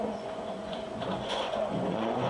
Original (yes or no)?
no